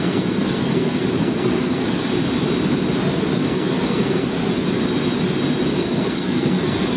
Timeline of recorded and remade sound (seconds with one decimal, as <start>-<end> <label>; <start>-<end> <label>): 0.0-2.1 remade; 2.1-3.4 recorded; 3.4-4.4 remade; 4.4-5.7 recorded; 5.7-7.0 remade